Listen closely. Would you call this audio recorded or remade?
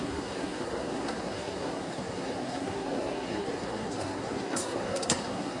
remade